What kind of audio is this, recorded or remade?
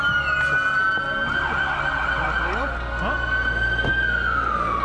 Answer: recorded